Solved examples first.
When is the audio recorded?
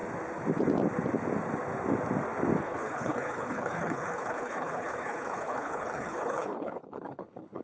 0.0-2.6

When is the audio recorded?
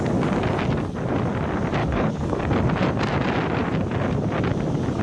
0.0-1.8; 2.4-5.0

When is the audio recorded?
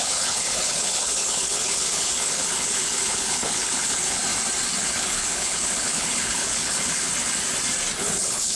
4.2-4.8; 7.1-8.0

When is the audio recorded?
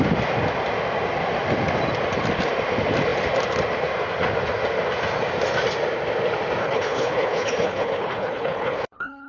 0.0-6.6